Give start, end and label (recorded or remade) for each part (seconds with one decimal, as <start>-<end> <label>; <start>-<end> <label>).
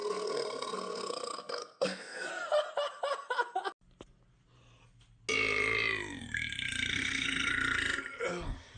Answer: 0.0-2.3 remade; 2.3-6.9 recorded; 6.9-7.5 remade; 7.5-8.8 recorded